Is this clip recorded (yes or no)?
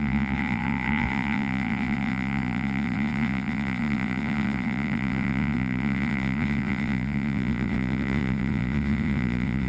no